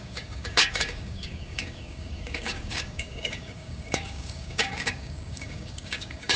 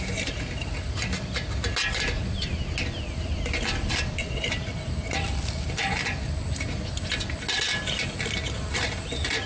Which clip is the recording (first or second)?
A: second